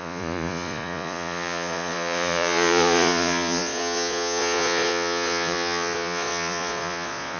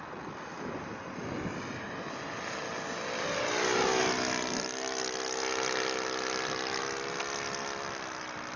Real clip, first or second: second